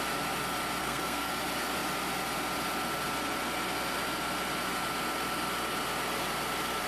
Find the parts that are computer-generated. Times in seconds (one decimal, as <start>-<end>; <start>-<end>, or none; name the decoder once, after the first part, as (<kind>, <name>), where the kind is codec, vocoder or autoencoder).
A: 0.8-1.3 (codec, SNAC)